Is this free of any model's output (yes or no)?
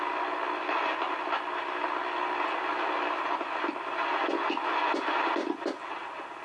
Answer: yes